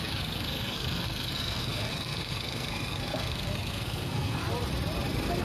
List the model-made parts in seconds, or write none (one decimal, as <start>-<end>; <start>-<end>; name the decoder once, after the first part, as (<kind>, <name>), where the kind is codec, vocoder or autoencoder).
0.0-4.4 (codec, SNAC)